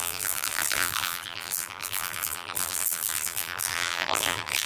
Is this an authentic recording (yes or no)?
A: no